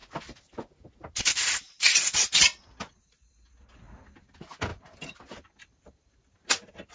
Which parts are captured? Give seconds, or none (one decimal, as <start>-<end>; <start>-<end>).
0.0-6.9